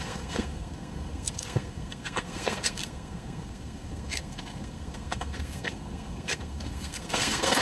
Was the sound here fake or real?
fake